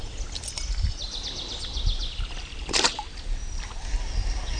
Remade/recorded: recorded